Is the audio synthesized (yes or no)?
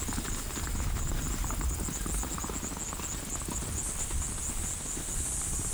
no